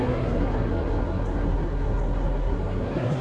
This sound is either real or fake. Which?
fake